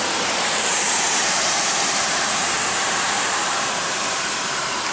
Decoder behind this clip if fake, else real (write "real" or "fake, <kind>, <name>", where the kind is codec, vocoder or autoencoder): fake, vocoder, BigVGAN v2